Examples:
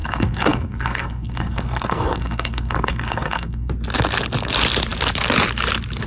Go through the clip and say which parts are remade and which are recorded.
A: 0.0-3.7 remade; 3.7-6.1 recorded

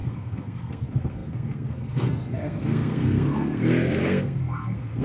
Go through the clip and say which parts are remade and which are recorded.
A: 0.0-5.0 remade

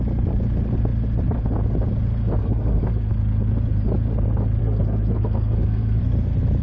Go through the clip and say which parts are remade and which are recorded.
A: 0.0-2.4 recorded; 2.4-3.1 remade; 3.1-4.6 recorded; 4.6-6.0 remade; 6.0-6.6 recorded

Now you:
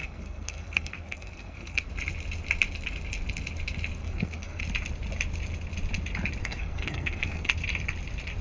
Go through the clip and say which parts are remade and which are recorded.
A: 0.0-1.9 remade; 1.9-4.0 recorded; 4.0-4.6 remade; 4.6-6.4 recorded; 6.4-7.5 remade; 7.5-8.4 recorded

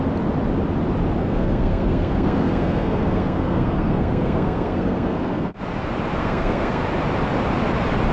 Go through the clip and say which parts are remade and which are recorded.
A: 0.0-1.2 recorded; 1.2-5.6 remade; 5.6-6.2 recorded; 6.2-6.8 remade; 6.8-8.1 recorded